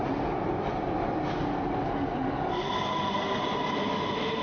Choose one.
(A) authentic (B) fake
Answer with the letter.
A